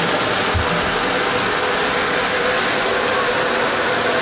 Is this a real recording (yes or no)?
yes